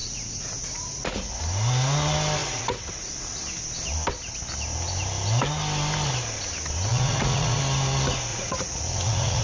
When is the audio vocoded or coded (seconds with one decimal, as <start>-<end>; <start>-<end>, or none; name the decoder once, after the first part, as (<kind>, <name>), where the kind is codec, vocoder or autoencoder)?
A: 0.0-1.4 (vocoder, Vocos); 2.4-3.1; 6.9-7.6; 8.3-9.4